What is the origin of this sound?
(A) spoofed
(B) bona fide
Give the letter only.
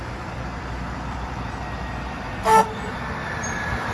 A